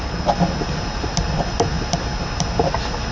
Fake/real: real